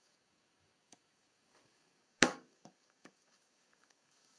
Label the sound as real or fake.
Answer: fake